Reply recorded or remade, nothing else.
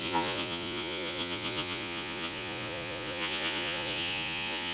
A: remade